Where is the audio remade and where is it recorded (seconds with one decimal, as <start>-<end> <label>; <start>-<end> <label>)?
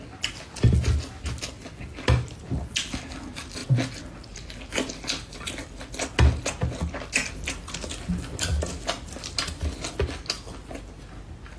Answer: 0.0-11.6 recorded